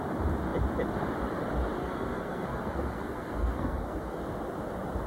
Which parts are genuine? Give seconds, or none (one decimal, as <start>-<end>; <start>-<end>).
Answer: 0.0-1.8; 4.2-5.1